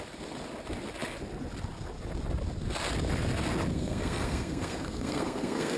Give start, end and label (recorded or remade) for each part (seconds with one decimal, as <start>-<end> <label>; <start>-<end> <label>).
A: 0.0-3.7 recorded; 3.7-5.8 remade